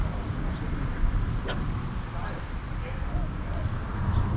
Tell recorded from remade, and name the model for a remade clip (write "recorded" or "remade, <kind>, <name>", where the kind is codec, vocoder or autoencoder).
recorded